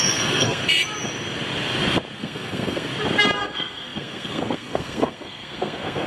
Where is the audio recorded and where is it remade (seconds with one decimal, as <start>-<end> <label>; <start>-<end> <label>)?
0.0-0.6 remade; 0.6-2.2 recorded; 2.2-2.9 remade; 2.9-3.4 recorded; 3.4-6.1 remade